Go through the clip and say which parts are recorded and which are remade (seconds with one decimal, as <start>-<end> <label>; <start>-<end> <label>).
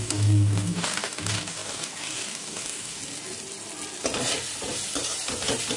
0.0-3.0 remade; 3.0-5.8 recorded